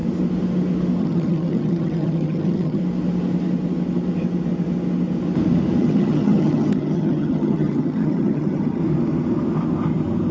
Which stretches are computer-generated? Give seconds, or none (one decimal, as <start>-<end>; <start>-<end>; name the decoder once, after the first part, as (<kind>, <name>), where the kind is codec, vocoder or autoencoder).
1.0-2.8 (vocoder, HiFi-GAN); 5.8-8.8